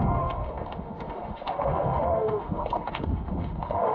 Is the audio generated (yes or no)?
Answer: yes